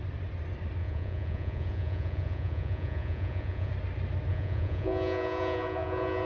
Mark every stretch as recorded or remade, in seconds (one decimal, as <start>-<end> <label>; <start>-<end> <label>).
0.0-0.8 recorded; 0.8-3.7 remade; 3.7-4.3 recorded; 4.3-6.3 remade